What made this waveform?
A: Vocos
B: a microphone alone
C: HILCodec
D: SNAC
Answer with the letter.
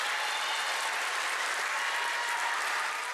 B